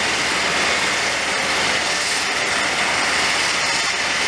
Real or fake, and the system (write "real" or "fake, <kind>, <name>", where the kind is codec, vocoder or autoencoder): real